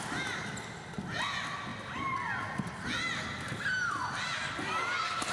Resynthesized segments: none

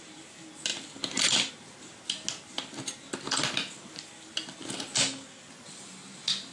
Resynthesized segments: none

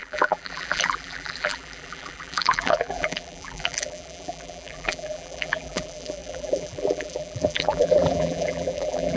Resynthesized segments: 0.0-9.2

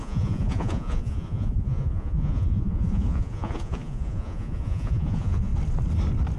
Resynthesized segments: 0.0-5.5

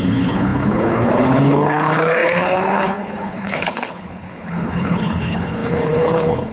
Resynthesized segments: 0.0-6.5

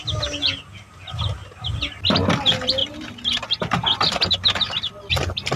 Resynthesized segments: none

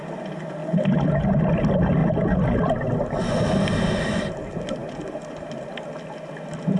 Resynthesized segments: 0.6-1.4

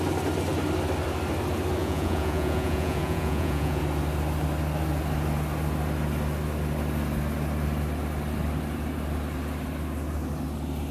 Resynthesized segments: 1.8-3.8